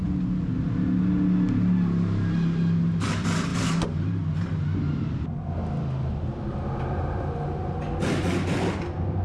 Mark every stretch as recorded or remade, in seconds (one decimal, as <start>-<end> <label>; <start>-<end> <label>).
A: 0.0-9.2 recorded